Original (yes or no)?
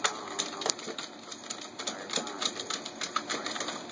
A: yes